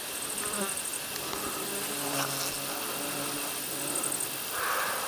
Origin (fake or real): real